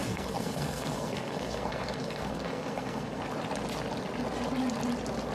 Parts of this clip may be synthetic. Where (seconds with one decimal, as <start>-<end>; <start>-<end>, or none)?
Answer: 0.0-3.2